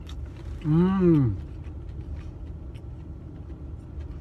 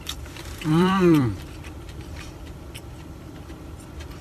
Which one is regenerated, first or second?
second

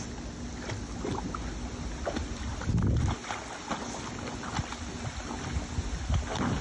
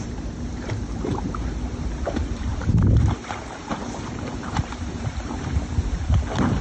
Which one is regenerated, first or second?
second